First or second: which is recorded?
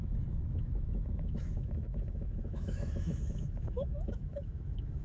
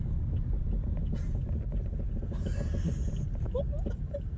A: second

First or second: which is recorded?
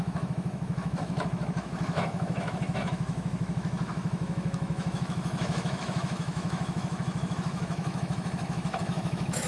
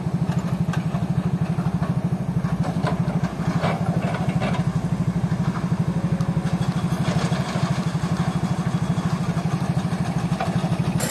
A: second